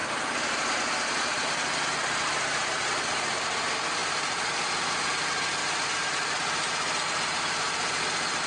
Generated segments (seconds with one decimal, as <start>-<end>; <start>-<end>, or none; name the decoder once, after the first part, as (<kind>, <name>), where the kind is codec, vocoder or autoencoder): 0.0-2.9 (vocoder, BigVGAN v2); 4.0-4.6; 5.6-8.0